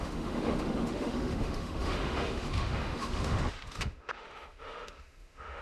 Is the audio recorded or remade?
remade